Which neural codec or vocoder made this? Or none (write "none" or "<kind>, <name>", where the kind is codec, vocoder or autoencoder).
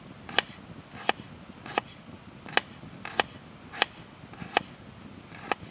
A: none